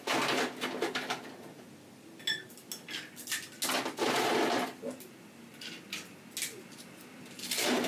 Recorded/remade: recorded